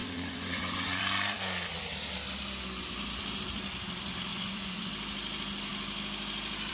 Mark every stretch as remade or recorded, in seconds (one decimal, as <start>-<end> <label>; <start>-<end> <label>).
0.0-1.0 remade; 1.0-4.3 recorded; 4.3-4.9 remade; 4.9-6.7 recorded